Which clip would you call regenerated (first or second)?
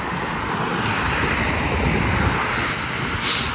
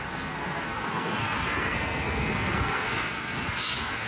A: second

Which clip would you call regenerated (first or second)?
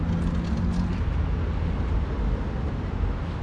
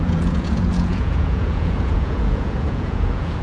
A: second